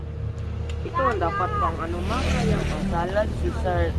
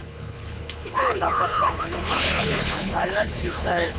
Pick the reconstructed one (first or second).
second